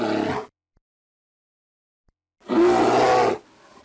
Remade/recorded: recorded